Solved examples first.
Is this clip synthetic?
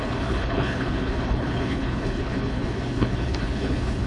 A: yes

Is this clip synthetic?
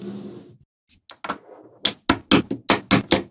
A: no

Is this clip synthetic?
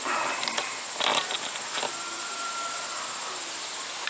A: no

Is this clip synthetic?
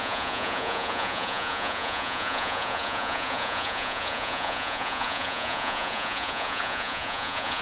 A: yes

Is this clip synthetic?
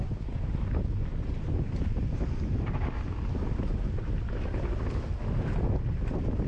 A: no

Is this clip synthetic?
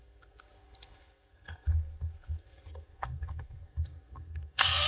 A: yes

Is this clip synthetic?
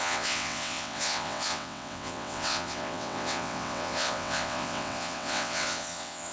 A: yes